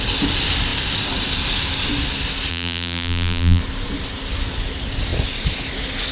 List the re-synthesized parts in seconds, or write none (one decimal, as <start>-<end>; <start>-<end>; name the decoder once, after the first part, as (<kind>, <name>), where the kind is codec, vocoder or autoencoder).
2.5-3.6 (vocoder, BigVGAN v2)